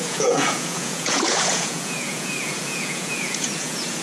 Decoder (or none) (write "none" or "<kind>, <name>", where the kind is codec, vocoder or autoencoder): vocoder, Vocos